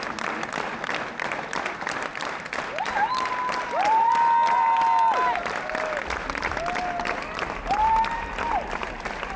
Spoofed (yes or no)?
no